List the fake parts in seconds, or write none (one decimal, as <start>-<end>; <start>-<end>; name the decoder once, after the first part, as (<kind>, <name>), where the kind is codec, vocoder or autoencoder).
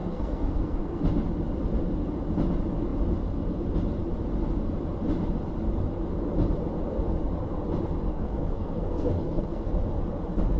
0.0-1.0 (codec, SNAC); 8.1-9.7